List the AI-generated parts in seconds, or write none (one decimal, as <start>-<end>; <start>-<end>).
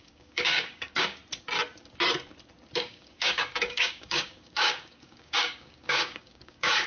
0.0-1.2; 2.8-6.9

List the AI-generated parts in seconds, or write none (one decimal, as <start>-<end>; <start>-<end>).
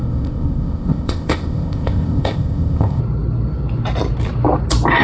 0.0-3.0